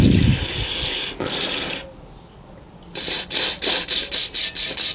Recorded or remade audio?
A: recorded